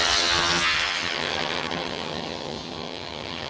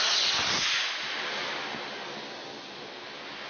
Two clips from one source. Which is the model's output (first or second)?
first